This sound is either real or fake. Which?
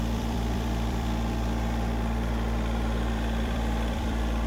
fake